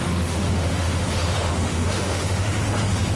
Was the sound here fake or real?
fake